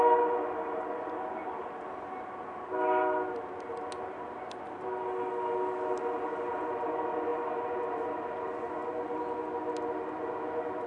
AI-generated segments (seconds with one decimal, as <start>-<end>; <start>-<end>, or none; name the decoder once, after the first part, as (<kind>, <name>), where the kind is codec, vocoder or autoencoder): none